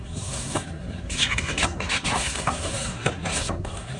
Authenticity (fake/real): fake